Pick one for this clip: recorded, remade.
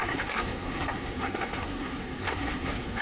remade